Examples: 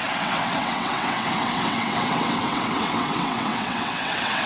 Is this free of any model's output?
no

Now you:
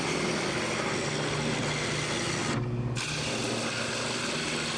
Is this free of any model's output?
yes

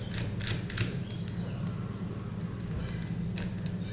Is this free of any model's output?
yes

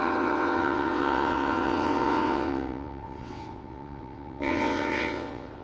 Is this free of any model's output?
no